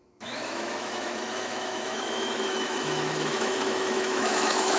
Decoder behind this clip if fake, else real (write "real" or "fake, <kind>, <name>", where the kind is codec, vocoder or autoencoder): fake, autoencoder, DAC-VAE